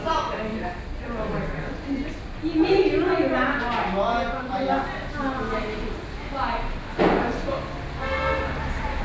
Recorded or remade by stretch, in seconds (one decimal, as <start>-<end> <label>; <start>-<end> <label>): 0.0-9.0 recorded